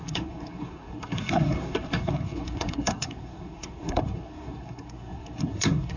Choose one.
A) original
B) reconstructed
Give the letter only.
B